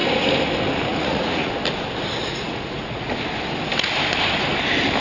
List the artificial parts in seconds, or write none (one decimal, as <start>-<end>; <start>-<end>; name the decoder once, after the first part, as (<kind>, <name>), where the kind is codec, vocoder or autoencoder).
0.9-1.5 (vocoder, Vocos); 2.3-3.1